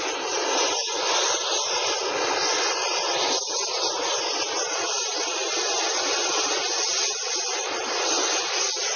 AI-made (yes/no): no